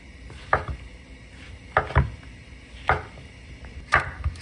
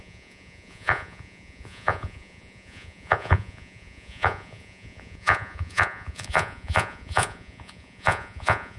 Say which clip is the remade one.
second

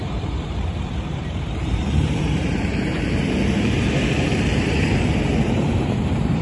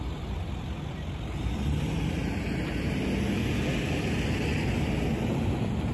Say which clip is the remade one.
first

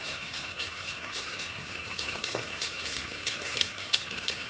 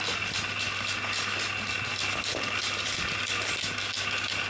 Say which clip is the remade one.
first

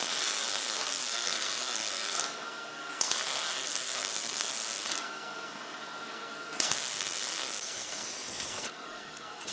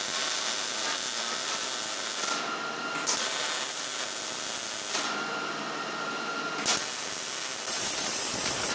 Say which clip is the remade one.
first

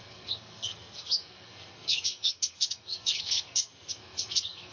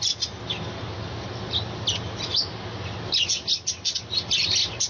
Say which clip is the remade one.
first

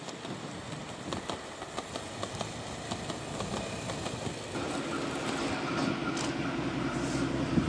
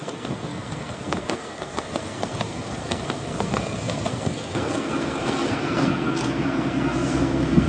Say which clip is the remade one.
second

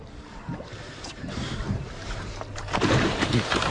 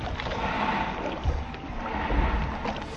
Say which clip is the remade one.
first